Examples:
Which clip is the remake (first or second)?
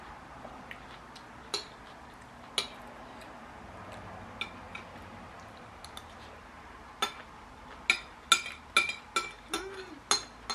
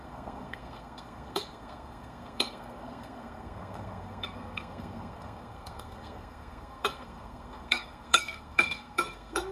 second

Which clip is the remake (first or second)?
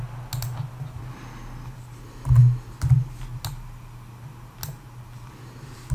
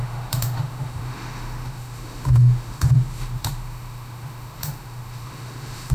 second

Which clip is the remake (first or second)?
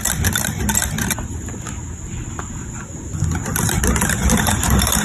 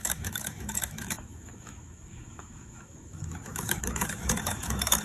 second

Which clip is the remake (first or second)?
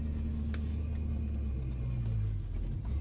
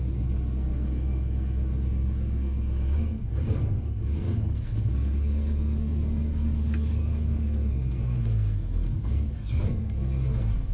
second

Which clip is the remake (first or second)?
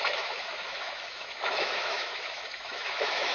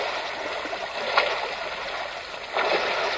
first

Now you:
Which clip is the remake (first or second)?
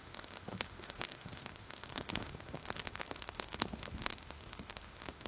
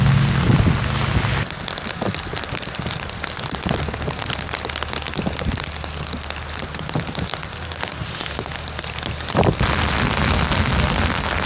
first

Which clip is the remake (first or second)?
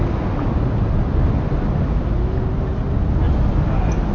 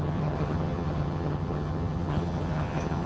second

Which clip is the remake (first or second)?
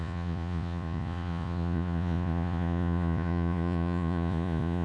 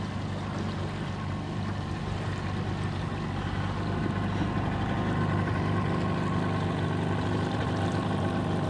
first